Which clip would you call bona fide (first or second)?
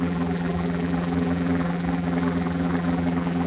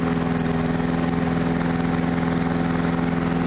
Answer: second